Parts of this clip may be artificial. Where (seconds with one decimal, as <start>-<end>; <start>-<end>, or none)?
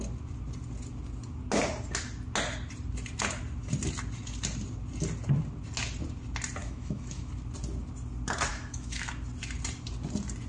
6.6-7.3; 8.5-9.1